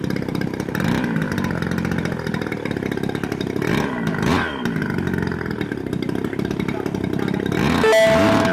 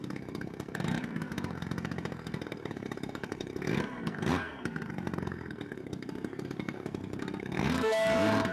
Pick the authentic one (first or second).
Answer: first